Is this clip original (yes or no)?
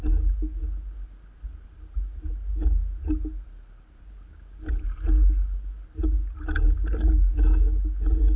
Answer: yes